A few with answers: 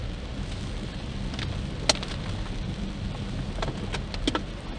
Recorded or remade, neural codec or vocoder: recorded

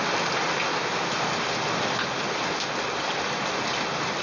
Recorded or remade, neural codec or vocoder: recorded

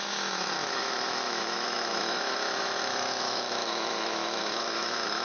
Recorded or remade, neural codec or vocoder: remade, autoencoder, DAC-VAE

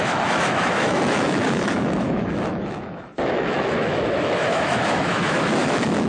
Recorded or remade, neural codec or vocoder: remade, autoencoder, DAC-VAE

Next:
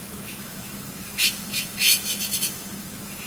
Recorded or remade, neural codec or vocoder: remade, autoencoder, DAC-VAE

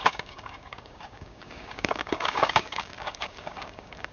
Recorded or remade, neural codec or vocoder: remade, codec, DAC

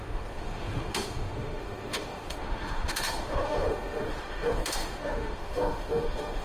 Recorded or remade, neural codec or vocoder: remade, autoencoder, DAC-VAE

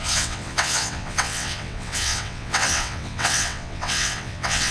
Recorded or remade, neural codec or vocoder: remade, vocoder, WaveNeXt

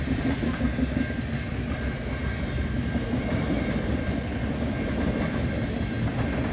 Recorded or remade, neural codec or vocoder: recorded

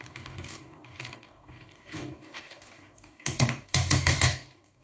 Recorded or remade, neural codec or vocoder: remade, codec, DAC